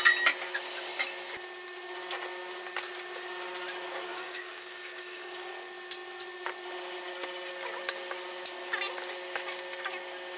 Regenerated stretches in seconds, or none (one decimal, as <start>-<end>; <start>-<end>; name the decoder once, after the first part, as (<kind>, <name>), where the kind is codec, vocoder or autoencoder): 4.1-5.5 (codec, DAC)